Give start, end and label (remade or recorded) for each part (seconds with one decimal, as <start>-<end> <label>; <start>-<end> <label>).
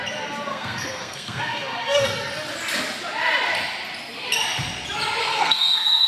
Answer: 0.0-0.5 recorded; 0.5-2.1 remade; 2.1-5.2 recorded; 5.2-6.1 remade